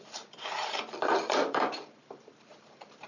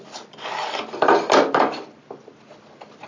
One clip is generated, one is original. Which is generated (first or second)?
first